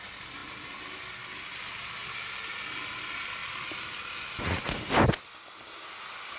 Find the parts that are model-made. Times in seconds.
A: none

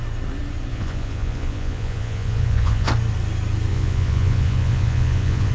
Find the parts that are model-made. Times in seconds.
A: 0.7-2.9 (vocoder, Vocos); 3.7-5.5

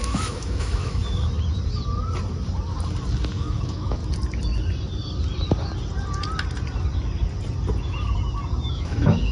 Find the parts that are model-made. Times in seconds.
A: 0.0-1.0 (autoencoder, DAC-VAE); 3.3-4.0; 8.7-9.3

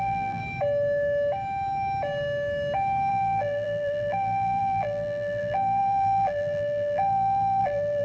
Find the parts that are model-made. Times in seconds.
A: 0.0-0.4 (vocoder, BigVGAN v2); 3.1-8.0

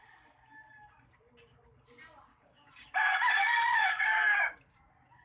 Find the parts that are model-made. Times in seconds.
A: 2.3-4.0 (codec, DAC)

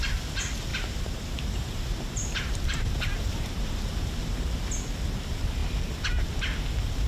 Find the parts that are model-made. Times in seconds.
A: 0.7-4.7 (vocoder, BigVGAN v2)

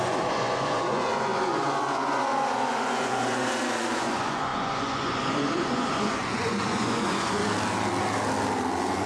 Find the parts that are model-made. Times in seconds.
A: 0.0-7.4 (vocoder, Vocos)

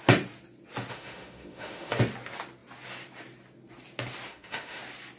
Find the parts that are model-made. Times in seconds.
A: 0.9-2.0 (autoencoder, DAC-VAE); 4.3-4.8